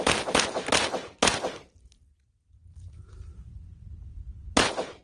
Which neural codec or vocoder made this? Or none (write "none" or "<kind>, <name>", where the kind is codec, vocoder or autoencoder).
none